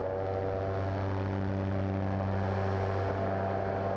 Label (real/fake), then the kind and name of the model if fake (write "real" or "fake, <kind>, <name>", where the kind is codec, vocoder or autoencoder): real